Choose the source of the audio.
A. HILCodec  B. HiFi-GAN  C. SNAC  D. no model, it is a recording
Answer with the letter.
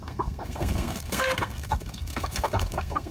C